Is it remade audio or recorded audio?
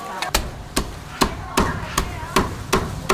recorded